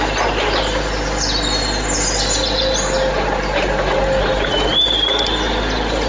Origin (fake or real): real